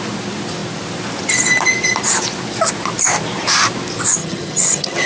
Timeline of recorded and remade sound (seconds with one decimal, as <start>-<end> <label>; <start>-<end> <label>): 0.0-4.2 recorded; 4.2-5.1 remade